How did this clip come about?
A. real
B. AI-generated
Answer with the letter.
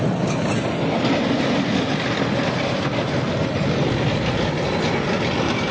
B